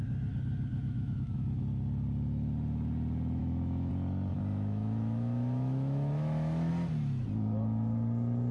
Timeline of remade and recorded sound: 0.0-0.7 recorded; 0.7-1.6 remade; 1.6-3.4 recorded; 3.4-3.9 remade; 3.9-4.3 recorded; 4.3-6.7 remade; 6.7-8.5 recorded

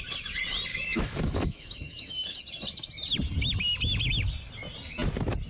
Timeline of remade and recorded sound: 0.0-0.7 recorded; 0.7-2.4 remade; 2.4-5.5 recorded

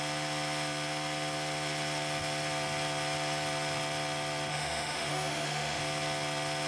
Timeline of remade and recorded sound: 0.0-4.5 recorded; 4.5-5.8 remade; 5.8-6.7 recorded

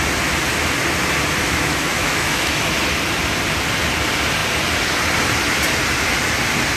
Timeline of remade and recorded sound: 0.0-1.4 recorded; 1.4-2.7 remade; 2.7-6.8 recorded

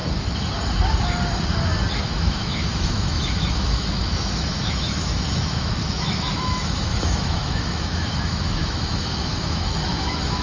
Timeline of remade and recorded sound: 0.0-1.9 recorded; 1.9-10.4 remade

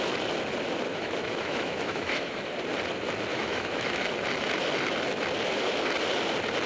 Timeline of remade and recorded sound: 0.0-0.9 recorded; 0.9-2.3 remade; 2.3-3.3 recorded; 3.3-4.1 remade; 4.1-6.7 recorded